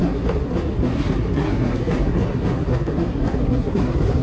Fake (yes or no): yes